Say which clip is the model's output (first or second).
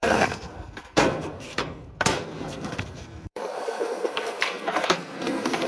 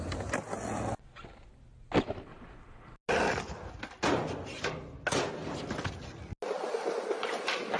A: first